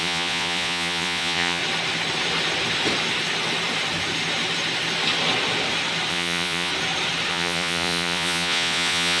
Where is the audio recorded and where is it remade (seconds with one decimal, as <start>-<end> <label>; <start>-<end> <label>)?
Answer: 0.0-1.6 remade; 1.6-6.1 recorded; 6.1-6.7 remade; 6.7-7.3 recorded; 7.3-9.2 remade